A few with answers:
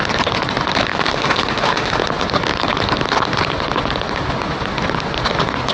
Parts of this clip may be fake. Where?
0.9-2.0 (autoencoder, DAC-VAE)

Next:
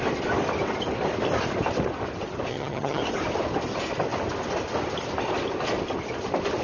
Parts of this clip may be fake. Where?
2.5-3.0 (vocoder, HiFi-GAN)

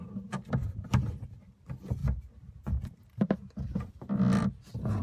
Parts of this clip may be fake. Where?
none

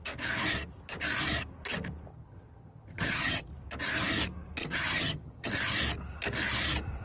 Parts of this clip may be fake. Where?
2.1-3.5 (vocoder, HiFi-GAN); 4.6-5.5